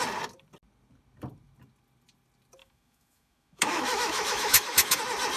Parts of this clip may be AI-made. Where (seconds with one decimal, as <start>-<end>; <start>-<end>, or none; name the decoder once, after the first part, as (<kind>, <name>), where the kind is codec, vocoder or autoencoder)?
2.6-5.0 (autoencoder, DAC-VAE)